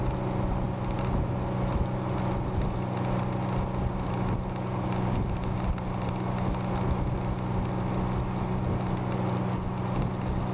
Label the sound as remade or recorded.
recorded